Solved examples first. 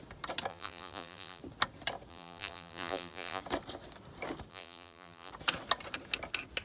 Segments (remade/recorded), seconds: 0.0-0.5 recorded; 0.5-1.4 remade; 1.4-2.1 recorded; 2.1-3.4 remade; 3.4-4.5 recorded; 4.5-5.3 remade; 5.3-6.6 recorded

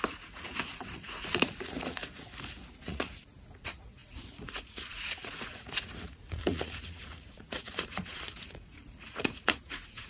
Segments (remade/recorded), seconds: 0.0-2.0 remade; 2.0-2.7 recorded; 2.7-10.1 remade

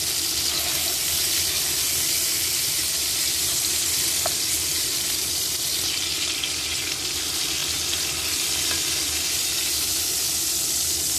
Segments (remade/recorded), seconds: 0.0-11.2 recorded

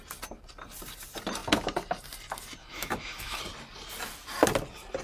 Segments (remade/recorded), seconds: 0.0-2.6 recorded; 2.6-3.4 remade; 3.4-5.0 recorded

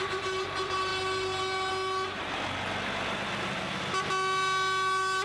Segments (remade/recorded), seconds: 0.0-5.2 recorded

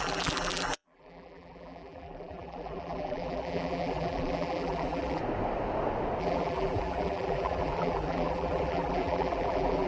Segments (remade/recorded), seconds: 0.0-5.2 remade; 5.2-6.2 recorded; 6.2-9.9 remade

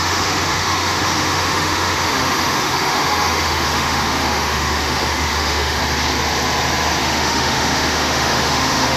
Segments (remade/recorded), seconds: 0.0-5.8 remade; 5.8-7.0 recorded; 7.0-9.0 remade